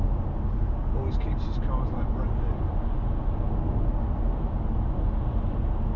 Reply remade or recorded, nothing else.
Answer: recorded